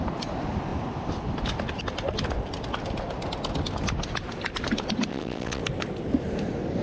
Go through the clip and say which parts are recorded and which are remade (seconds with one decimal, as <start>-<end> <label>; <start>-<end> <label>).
0.0-5.1 recorded; 5.1-5.6 remade; 5.6-6.8 recorded